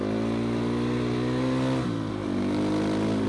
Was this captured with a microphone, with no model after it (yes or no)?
yes